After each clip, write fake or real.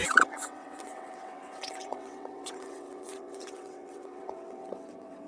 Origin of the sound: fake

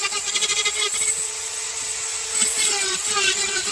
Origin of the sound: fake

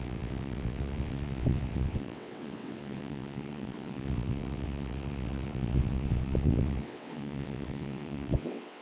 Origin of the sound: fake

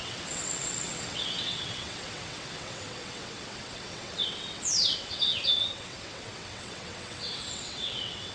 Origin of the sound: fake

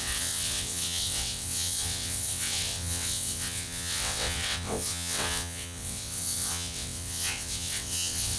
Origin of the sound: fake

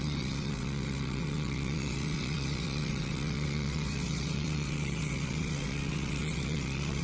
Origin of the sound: fake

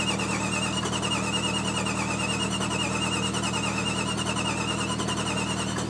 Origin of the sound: real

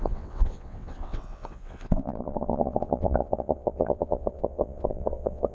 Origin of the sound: fake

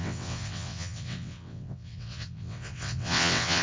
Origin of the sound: fake